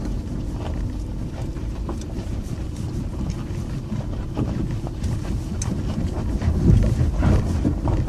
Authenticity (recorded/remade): recorded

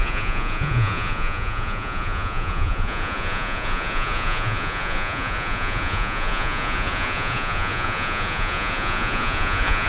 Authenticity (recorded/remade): remade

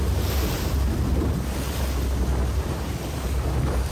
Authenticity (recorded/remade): recorded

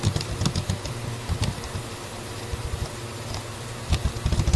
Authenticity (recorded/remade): recorded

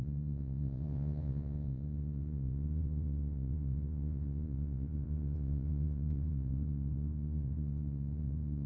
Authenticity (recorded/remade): remade